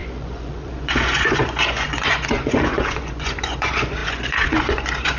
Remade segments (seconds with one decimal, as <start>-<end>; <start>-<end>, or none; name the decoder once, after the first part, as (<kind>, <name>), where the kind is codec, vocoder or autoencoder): 0.0-5.2 (vocoder, Vocos)